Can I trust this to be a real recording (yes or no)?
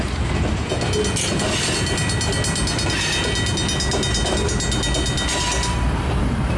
yes